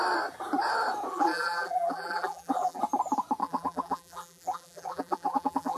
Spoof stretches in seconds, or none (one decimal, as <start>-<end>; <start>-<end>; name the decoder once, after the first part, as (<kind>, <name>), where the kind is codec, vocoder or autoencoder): 1.1-2.8 (vocoder, BigVGAN v2); 3.4-5.8